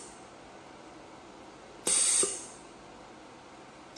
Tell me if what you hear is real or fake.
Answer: real